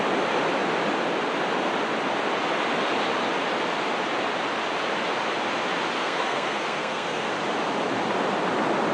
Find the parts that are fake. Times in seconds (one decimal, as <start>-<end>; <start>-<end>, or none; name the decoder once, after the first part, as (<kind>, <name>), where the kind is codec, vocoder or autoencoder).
6.0-7.3 (codec, SNAC)